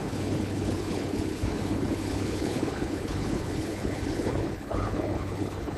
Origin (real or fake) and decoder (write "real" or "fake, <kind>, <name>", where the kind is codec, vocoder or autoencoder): fake, codec, HILCodec